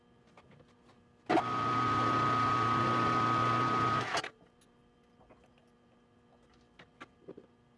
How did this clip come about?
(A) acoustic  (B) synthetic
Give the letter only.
A